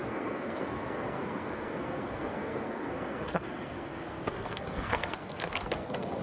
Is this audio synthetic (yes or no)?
yes